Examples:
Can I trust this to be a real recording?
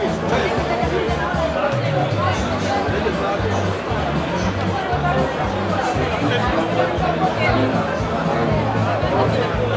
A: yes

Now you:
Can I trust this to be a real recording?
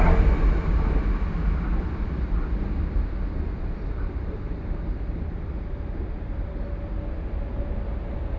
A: yes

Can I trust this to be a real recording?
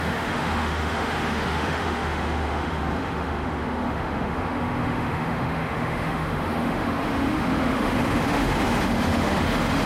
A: no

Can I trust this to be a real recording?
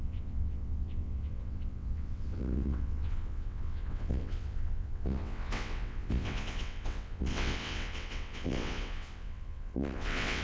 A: no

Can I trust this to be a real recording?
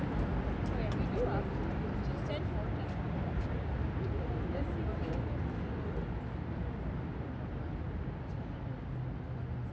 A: yes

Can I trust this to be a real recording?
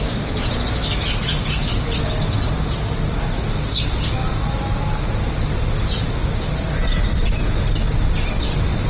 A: yes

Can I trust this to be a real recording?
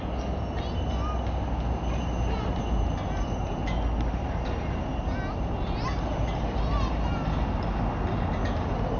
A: yes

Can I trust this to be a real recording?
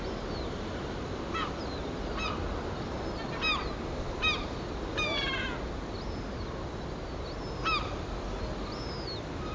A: yes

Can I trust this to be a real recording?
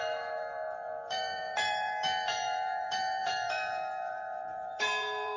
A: no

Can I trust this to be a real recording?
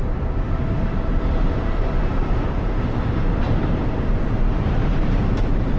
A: yes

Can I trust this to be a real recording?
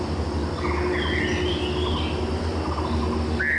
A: yes